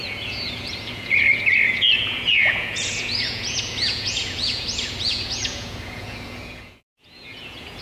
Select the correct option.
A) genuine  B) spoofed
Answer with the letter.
B